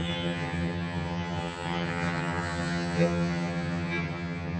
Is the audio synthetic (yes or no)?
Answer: yes